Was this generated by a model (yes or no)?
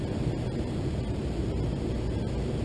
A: yes